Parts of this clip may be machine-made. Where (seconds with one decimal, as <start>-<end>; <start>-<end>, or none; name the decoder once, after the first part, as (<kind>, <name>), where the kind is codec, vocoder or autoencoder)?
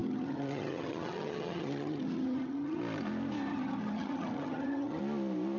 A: 0.0-2.8 (vocoder, HiFi-GAN); 3.5-5.0